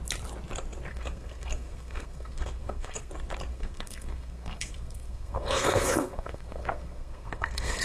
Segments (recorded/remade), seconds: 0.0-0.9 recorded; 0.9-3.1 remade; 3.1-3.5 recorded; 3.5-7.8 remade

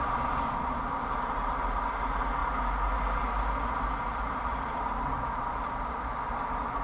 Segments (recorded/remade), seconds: 0.0-6.8 recorded

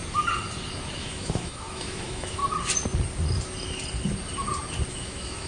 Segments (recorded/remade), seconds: 0.0-1.0 recorded; 1.0-2.4 remade; 2.4-4.9 recorded; 4.9-5.5 remade

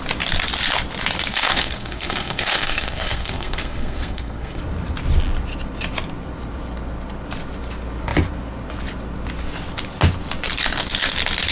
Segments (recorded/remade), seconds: 0.0-1.3 recorded; 1.3-4.6 remade; 4.6-11.5 recorded